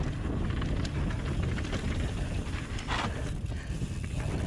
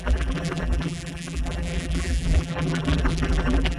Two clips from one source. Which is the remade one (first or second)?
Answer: second